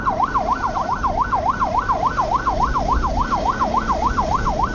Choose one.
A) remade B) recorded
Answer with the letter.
B